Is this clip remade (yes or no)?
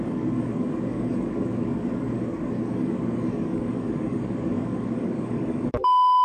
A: yes